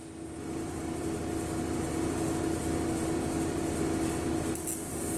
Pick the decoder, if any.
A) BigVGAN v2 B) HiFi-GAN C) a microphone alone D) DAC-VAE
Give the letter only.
C